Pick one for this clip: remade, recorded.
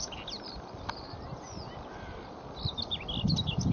recorded